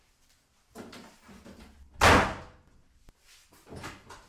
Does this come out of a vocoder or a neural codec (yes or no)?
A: no